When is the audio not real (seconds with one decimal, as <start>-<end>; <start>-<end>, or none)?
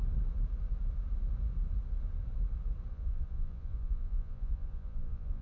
2.9-5.4